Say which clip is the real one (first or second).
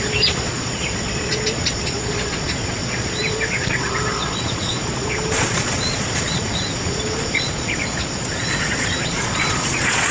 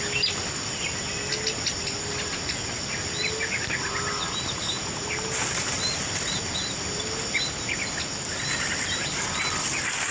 second